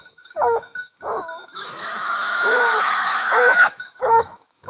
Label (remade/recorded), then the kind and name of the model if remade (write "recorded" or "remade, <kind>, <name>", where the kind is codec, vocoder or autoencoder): remade, autoencoder, DAC-VAE